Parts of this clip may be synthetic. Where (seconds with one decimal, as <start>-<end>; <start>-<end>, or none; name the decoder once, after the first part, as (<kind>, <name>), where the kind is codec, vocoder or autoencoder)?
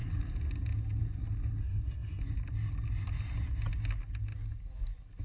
1.6-2.2 (codec, SNAC)